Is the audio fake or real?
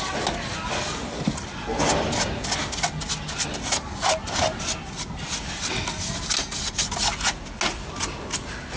real